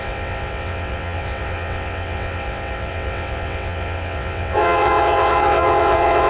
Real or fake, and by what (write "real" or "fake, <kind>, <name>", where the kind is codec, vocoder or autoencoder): fake, vocoder, WaveNeXt